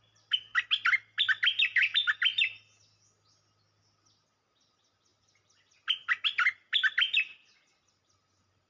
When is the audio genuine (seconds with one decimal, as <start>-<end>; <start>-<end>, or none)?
0.0-8.7